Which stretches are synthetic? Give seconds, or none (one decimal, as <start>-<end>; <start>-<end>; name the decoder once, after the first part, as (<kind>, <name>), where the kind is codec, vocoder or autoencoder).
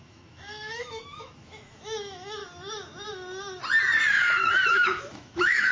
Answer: 0.0-2.4 (autoencoder, DAC-VAE); 4.7-5.7